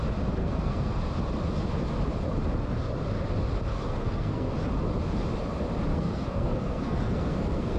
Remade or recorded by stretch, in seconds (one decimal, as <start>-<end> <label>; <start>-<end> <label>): 0.0-0.4 recorded; 0.4-1.0 remade; 1.0-3.7 recorded; 3.7-4.5 remade; 4.5-5.9 recorded; 5.9-7.8 remade